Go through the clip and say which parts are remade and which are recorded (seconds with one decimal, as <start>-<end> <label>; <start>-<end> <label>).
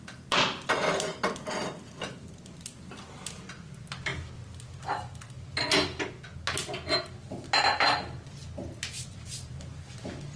0.0-10.4 recorded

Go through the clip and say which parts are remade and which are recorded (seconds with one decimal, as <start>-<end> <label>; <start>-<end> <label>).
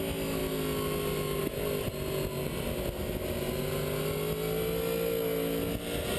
0.0-6.2 recorded